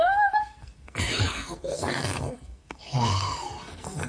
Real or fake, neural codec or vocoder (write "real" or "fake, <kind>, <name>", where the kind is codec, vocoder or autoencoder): fake, codec, SNAC